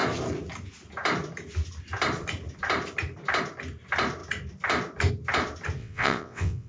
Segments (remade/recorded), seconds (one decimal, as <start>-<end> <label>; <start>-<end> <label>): 0.0-5.8 recorded; 5.8-6.7 remade